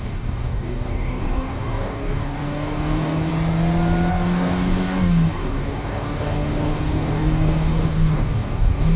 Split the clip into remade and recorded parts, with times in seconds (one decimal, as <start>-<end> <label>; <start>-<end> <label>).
0.0-3.3 remade; 3.3-4.1 recorded; 4.1-9.0 remade